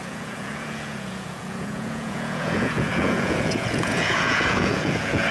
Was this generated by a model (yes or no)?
yes